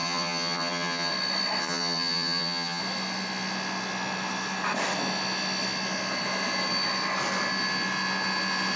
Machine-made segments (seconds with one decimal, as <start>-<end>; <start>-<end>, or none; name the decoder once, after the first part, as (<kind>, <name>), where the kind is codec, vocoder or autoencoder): 0.0-1.1 (vocoder, HiFi-GAN); 1.6-2.8